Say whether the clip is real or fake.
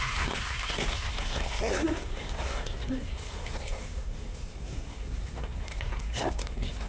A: fake